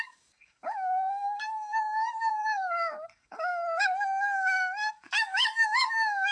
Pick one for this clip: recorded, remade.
remade